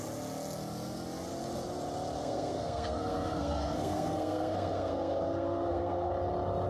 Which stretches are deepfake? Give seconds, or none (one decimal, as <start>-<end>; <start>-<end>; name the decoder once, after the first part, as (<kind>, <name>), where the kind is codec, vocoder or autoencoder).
2.2-6.1 (codec, SNAC)

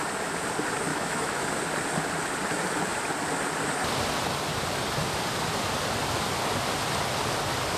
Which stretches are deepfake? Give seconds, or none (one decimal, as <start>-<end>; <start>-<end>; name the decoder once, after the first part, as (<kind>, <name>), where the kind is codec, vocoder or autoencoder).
0.9-1.4 (autoencoder, DAC-VAE)

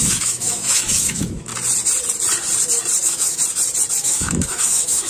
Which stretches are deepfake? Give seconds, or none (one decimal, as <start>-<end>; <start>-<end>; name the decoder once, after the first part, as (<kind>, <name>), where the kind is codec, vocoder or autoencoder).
0.0-1.5 (autoencoder, DAC-VAE); 3.0-3.4; 4.0-5.1

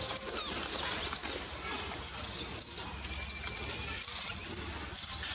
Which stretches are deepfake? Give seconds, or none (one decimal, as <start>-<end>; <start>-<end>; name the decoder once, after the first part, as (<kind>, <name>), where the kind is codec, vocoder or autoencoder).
1.2-2.0 (vocoder, BigVGAN v2)

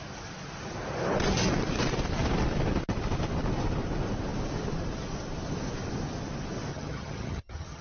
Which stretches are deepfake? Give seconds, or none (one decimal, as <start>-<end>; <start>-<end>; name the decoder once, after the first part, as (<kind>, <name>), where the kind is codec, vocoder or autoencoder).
6.7-7.8 (vocoder, HiFi-GAN)

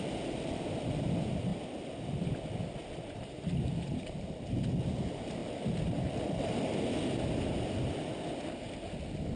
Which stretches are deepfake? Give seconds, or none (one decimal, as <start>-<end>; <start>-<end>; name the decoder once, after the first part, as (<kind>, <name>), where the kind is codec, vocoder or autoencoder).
1.5-4.5 (vocoder, BigVGAN v2)